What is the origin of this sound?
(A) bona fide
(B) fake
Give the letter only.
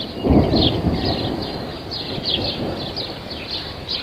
A